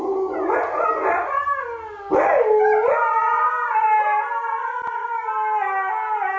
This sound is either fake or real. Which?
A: real